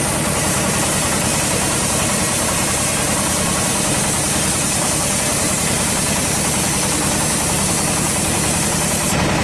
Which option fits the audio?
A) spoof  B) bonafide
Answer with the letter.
A